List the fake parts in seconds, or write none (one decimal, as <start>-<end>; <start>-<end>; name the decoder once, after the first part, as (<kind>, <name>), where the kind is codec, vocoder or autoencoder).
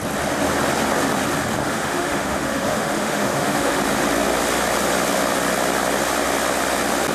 1.6-3.8 (autoencoder, DAC-VAE)